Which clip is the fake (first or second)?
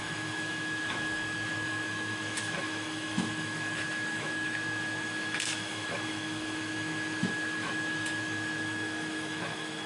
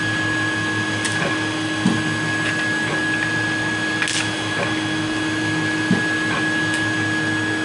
first